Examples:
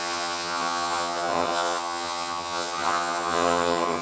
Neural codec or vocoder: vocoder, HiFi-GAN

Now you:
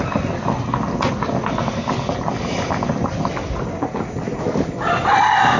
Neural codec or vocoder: none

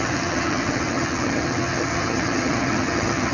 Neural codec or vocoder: vocoder, HiFi-GAN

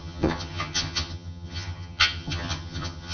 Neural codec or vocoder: vocoder, HiFi-GAN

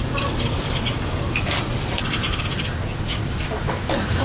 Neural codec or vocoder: none